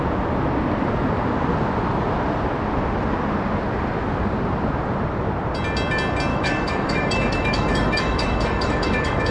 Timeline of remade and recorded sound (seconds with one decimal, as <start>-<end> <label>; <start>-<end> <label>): 0.0-6.3 recorded; 6.3-9.3 remade